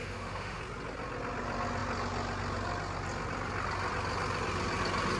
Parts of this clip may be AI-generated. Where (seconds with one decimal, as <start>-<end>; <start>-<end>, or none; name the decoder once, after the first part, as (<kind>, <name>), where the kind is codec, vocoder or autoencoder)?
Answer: 0.0-0.6 (autoencoder, DAC-VAE)